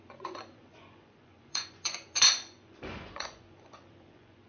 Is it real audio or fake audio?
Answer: fake